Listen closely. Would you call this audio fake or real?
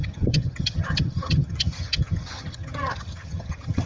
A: fake